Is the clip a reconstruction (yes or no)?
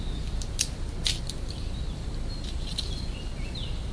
no